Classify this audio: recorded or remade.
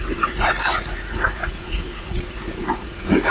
remade